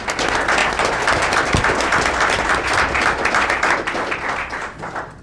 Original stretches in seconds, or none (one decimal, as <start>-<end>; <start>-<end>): 0.0-5.2